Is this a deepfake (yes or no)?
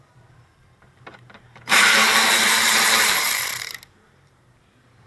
yes